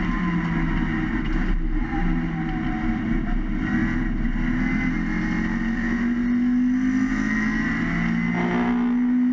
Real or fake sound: real